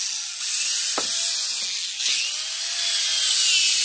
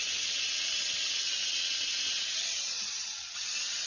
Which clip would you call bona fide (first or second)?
first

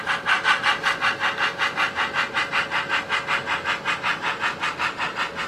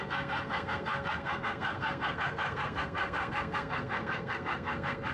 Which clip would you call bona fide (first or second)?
first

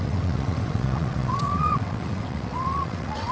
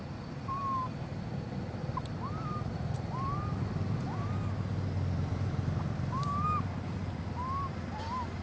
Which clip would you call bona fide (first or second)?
second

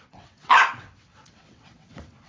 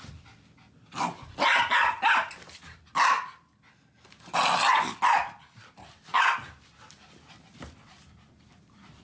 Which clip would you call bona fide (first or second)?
second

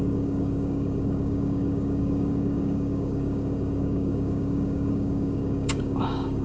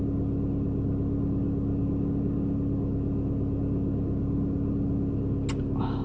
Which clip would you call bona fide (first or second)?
second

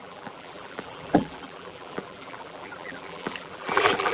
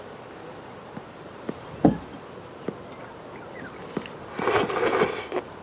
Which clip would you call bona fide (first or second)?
second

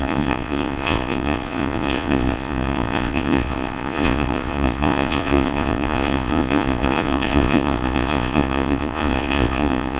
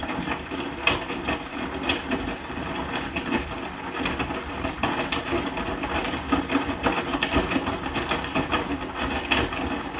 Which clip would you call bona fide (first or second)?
second